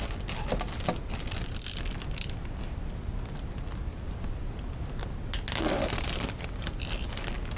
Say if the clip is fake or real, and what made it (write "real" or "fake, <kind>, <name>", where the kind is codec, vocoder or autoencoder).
real